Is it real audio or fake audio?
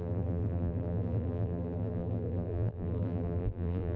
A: fake